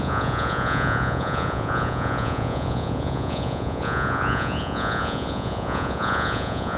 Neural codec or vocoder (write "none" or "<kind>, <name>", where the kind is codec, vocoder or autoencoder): vocoder, Vocos